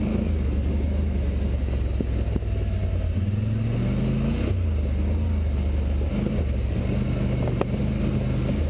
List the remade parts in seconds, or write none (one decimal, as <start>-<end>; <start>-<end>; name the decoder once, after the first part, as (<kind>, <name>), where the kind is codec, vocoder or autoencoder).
none